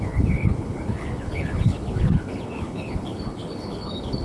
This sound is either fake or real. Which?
fake